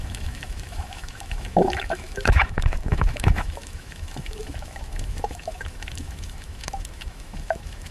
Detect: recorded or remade remade